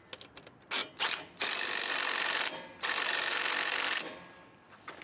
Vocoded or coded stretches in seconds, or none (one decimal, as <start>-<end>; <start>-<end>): none